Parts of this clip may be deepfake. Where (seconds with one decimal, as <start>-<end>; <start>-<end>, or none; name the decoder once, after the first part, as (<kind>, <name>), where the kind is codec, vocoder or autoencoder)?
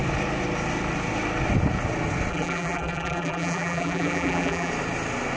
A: 2.3-4.7 (vocoder, BigVGAN v2)